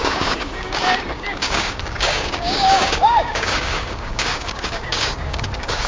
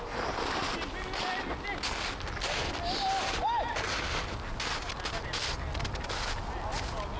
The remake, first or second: first